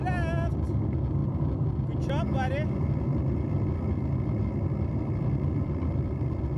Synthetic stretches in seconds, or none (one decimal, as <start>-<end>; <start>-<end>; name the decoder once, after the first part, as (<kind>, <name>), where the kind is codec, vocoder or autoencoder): none